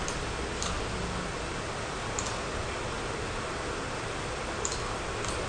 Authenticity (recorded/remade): recorded